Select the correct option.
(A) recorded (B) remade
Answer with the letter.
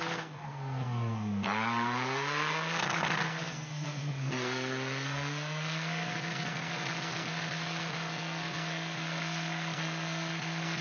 B